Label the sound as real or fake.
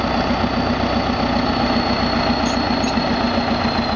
real